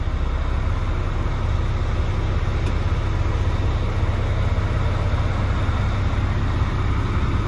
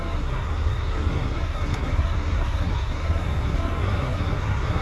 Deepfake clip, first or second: second